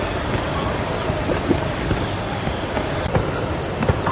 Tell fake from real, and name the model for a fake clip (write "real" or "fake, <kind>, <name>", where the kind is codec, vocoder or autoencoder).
fake, vocoder, BigVGAN v2